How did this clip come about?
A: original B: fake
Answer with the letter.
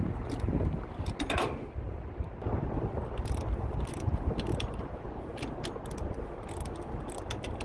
A